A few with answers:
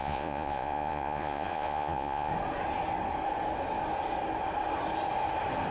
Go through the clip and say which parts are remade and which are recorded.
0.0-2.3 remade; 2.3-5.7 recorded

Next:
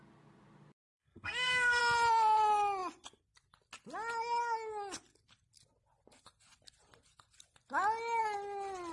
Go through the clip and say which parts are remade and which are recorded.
0.0-0.8 recorded; 0.8-1.8 remade; 1.8-8.9 recorded

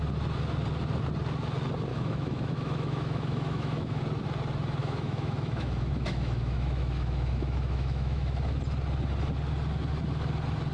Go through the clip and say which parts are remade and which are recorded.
0.0-1.9 recorded; 1.9-4.0 remade; 4.0-4.8 recorded; 4.8-8.6 remade; 8.6-10.7 recorded

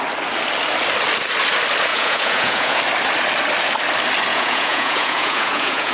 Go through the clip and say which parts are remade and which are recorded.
0.0-1.9 recorded; 1.9-2.8 remade; 2.8-4.3 recorded; 4.3-5.9 remade

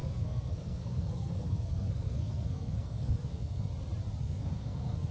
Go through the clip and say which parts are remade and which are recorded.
0.0-3.7 remade; 3.7-4.2 recorded; 4.2-5.1 remade

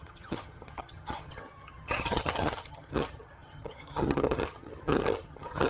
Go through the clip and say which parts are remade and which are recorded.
0.0-5.7 remade

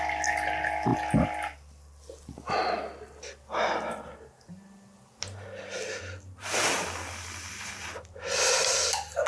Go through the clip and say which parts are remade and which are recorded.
0.0-9.3 recorded